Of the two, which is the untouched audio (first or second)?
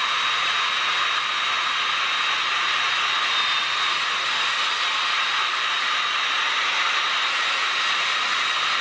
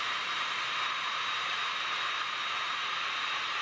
first